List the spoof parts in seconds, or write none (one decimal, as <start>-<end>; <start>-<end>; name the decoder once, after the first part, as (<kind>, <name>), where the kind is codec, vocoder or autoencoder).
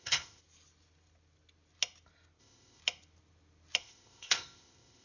0.0-0.4 (codec, ZipCodec); 2.4-2.8; 3.8-5.0